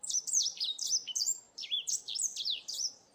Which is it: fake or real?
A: fake